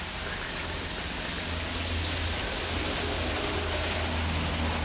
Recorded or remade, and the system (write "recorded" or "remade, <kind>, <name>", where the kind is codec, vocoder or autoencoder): recorded